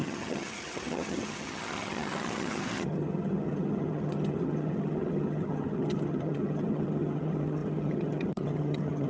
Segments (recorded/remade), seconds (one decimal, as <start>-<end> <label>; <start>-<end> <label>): 0.0-9.1 remade